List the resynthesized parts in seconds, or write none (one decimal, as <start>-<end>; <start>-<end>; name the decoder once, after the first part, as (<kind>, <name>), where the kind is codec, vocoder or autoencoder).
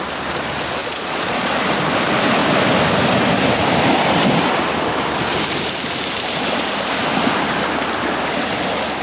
0.8-1.5 (vocoder, Vocos)